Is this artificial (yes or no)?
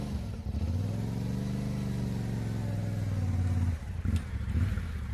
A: no